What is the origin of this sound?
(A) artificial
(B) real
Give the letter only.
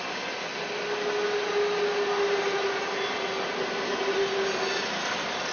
B